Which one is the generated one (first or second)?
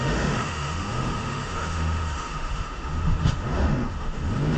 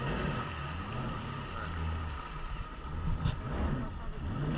first